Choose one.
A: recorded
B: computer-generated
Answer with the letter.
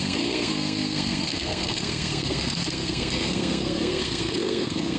B